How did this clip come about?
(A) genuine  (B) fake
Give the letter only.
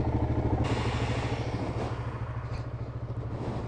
A